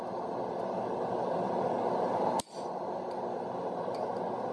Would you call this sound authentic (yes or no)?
yes